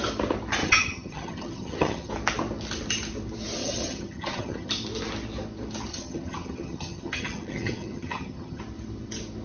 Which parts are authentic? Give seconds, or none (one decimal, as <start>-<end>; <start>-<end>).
0.0-0.6; 2.1-3.6; 4.7-5.9; 8.6-9.4